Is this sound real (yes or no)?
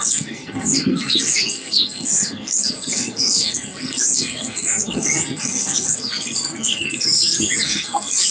no